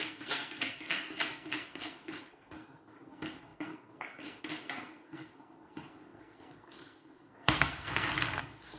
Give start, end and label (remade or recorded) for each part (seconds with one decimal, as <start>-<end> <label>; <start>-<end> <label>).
0.0-8.8 remade